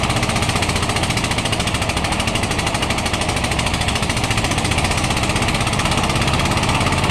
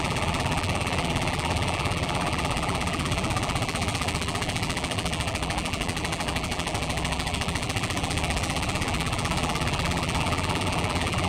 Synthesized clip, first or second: second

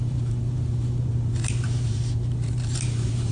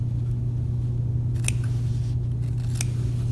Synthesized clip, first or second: first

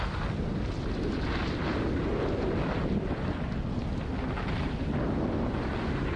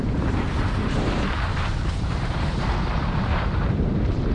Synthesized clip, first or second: second